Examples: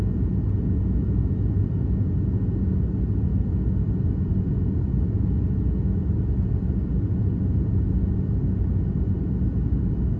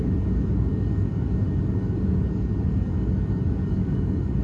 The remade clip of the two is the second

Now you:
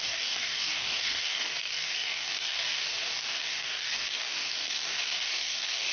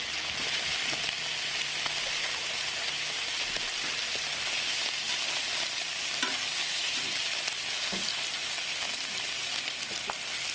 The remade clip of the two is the first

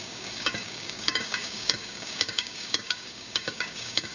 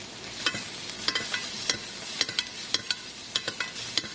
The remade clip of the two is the first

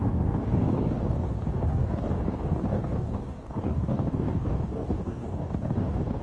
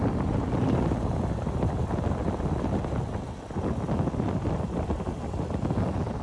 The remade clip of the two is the first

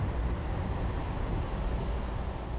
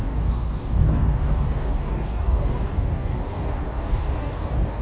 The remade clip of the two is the second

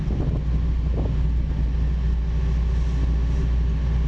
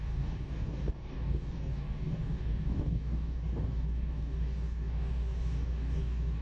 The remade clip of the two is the second